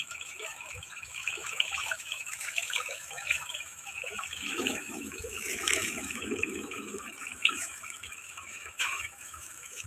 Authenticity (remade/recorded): remade